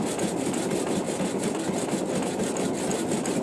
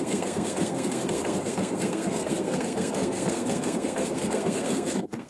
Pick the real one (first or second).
first